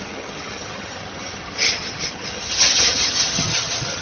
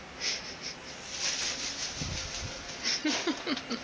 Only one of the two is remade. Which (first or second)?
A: first